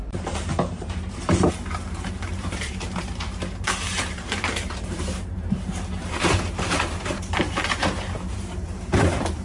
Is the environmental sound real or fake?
fake